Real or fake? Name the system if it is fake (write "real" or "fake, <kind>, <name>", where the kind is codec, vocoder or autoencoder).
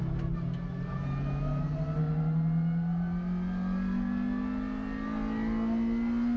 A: real